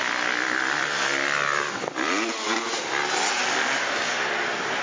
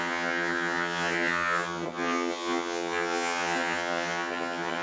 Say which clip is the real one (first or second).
first